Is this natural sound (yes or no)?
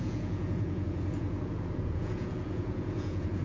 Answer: no